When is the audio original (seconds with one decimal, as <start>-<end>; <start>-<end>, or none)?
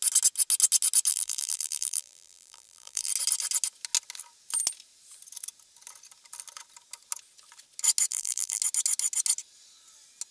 0.0-1.1; 3.1-8.1; 8.6-10.3